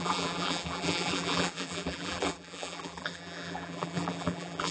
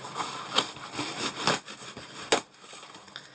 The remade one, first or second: first